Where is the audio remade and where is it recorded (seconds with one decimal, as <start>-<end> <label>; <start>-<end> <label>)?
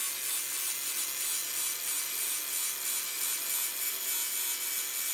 0.0-5.1 recorded